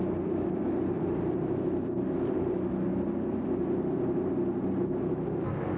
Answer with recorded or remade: recorded